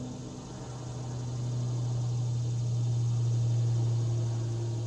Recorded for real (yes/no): yes